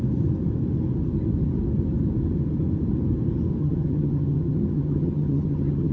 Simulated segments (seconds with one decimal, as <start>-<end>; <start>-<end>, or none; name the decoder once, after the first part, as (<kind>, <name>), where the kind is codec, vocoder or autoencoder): 3.6-5.9 (vocoder, HiFi-GAN)